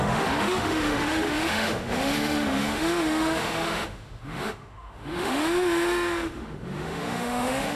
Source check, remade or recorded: remade